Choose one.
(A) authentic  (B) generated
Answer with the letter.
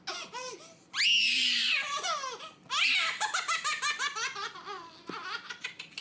A